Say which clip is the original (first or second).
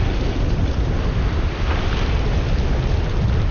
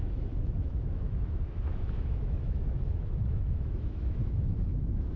first